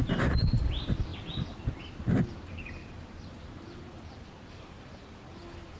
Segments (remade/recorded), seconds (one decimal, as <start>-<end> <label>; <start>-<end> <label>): 0.0-5.8 recorded